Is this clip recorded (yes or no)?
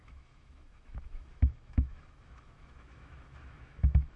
no